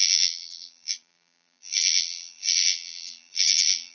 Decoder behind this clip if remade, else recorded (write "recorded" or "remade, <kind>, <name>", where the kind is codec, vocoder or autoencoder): remade, vocoder, BigVGAN v2